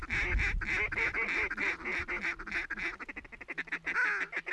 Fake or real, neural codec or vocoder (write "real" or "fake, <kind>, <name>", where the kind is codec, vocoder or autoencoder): real